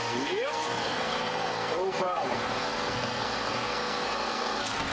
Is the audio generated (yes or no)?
yes